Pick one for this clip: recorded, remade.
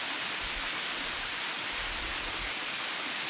recorded